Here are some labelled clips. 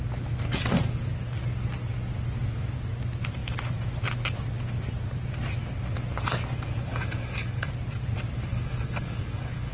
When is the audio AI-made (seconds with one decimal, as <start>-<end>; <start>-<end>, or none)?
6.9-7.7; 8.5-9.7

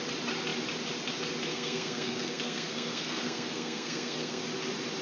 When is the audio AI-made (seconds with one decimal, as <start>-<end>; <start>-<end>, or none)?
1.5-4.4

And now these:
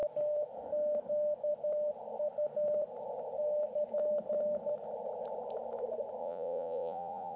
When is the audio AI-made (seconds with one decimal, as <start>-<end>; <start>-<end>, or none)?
6.2-7.4

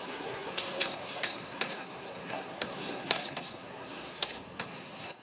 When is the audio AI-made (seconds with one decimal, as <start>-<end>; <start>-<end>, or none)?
0.0-5.2